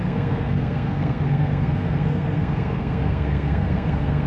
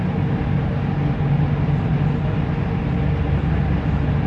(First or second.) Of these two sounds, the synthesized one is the first